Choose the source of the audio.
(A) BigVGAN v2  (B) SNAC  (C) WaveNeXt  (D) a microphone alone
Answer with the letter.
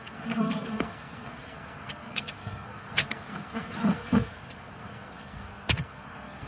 B